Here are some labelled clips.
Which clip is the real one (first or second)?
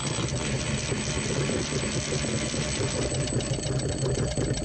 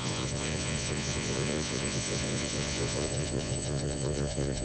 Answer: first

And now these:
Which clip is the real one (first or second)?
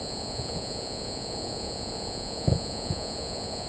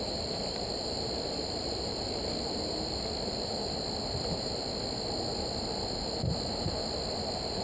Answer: second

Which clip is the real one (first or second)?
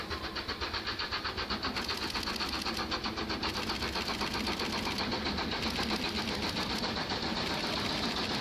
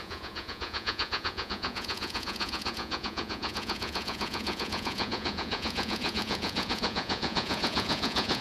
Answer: first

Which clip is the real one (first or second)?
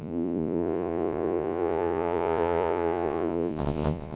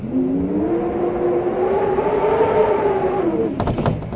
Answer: second